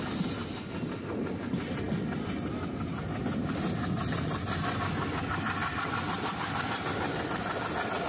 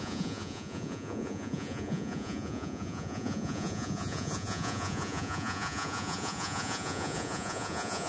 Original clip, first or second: first